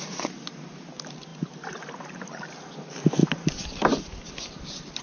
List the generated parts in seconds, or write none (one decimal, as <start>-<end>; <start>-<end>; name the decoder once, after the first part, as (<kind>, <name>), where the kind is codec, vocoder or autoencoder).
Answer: none